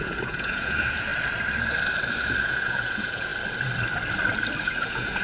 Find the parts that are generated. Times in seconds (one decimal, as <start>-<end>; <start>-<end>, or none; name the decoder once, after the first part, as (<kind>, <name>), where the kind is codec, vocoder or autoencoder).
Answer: 0.0-1.1 (vocoder, Vocos); 2.4-3.3; 4.6-5.2